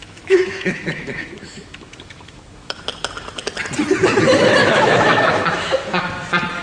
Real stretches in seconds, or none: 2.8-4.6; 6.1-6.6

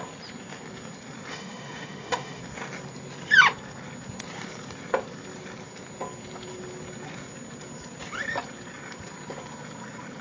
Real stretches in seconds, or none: 0.0-1.3; 2.4-10.2

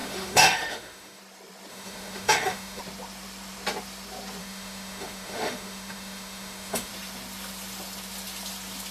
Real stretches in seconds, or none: 1.2-1.7; 2.8-4.4; 6.9-8.9